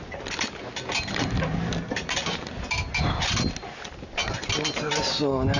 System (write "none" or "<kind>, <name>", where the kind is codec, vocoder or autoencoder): none